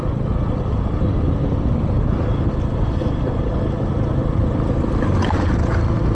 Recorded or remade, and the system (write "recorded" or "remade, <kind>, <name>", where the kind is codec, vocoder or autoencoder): recorded